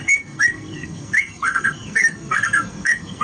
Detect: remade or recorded remade